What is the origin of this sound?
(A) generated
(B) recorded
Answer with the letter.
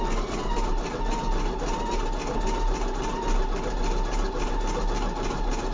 B